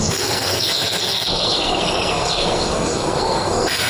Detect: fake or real fake